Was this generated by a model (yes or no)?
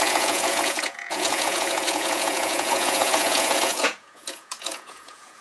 yes